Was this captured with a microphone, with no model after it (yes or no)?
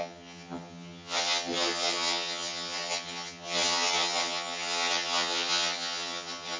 no